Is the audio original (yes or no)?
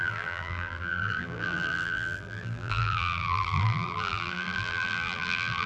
no